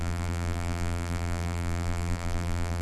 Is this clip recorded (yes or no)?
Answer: no